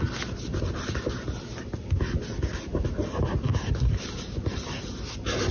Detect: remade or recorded recorded